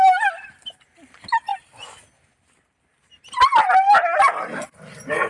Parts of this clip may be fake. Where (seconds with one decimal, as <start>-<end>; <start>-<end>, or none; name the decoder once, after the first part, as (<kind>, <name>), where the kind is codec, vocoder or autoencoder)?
none

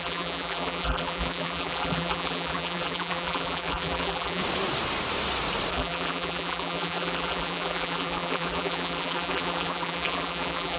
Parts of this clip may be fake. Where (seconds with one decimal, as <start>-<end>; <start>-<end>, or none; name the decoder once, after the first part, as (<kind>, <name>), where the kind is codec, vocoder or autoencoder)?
0.0-4.4 (vocoder, BigVGAN v2); 5.7-10.8

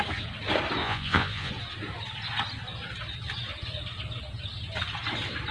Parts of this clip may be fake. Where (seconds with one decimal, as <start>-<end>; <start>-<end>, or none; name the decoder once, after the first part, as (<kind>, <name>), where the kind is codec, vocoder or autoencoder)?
0.8-1.5 (vocoder, Vocos)